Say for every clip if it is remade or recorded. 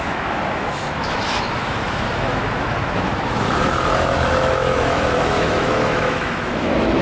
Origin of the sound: remade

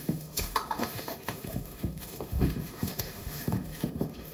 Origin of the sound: remade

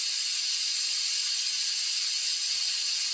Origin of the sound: recorded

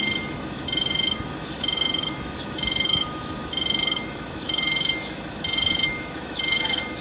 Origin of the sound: remade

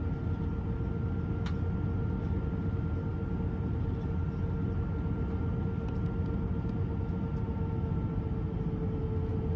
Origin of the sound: recorded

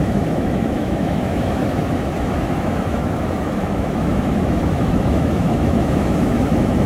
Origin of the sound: remade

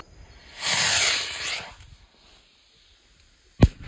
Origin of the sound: recorded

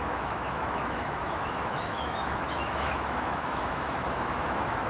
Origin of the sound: remade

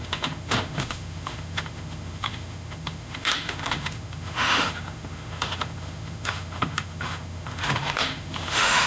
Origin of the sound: remade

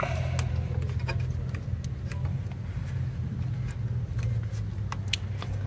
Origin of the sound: recorded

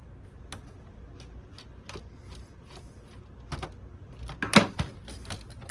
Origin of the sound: recorded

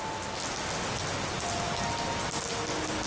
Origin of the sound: recorded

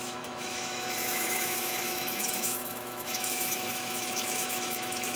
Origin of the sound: remade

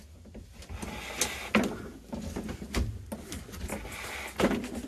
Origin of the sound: recorded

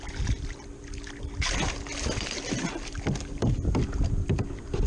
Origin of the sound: recorded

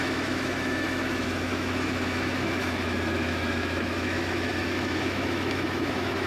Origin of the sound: remade